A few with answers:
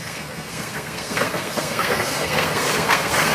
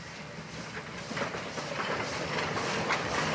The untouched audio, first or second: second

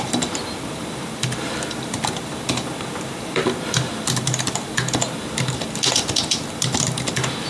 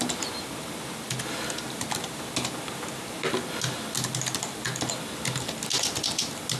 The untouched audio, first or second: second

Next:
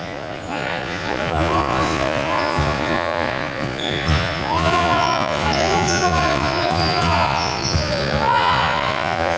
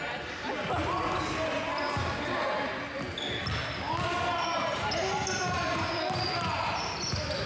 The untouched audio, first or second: second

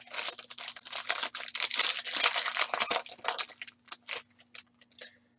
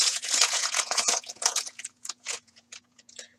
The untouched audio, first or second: first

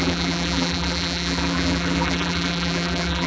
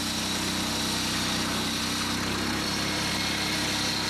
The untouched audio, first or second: second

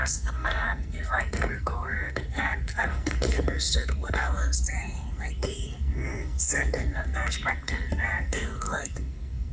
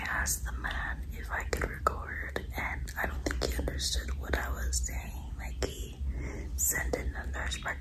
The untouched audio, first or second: second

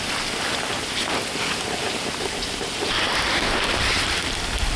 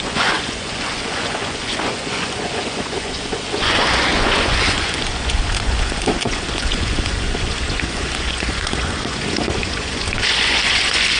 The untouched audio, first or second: first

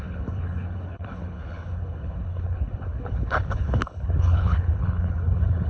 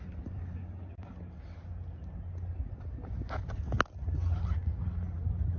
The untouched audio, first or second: second